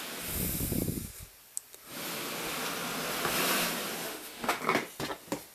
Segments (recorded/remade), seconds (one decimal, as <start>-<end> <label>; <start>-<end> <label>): 0.0-4.0 recorded; 4.0-4.6 remade; 4.6-5.5 recorded